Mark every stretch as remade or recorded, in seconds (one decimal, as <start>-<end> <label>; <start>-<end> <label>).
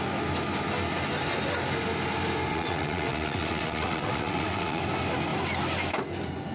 0.0-2.5 recorded; 2.5-4.8 remade; 4.8-6.5 recorded